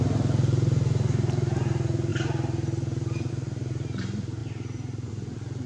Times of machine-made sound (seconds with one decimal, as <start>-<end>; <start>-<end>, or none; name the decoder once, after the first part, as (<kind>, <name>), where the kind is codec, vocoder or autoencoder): 2.1-3.3 (vocoder, BigVGAN v2)